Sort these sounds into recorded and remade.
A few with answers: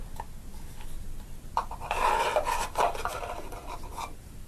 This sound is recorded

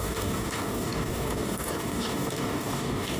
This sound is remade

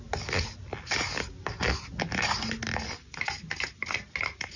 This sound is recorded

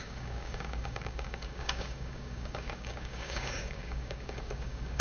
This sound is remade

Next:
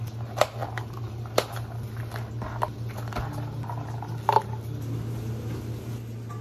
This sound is recorded